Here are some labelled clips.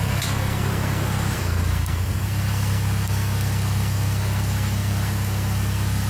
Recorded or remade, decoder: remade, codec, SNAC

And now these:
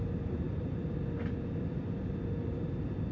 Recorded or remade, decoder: recorded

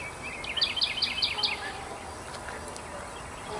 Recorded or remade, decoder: recorded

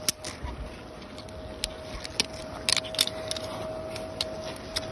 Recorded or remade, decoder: recorded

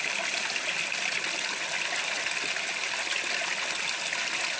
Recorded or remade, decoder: recorded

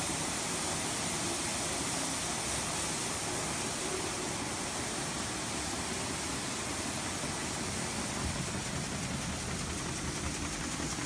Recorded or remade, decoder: recorded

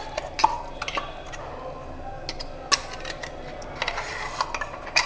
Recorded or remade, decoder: recorded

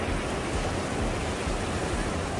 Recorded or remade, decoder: recorded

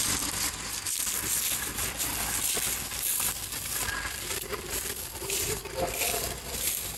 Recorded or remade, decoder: recorded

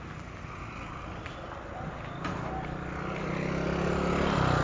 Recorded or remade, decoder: recorded